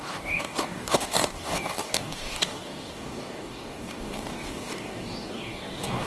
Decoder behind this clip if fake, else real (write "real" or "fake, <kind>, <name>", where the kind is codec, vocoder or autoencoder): fake, codec, DAC